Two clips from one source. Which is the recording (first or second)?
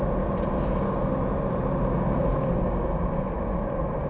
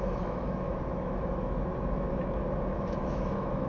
first